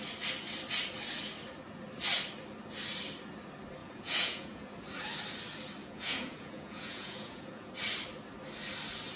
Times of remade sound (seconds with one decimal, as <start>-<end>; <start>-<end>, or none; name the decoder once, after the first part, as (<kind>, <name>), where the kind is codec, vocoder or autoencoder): 3.8-4.7 (vocoder, Vocos); 5.8-7.7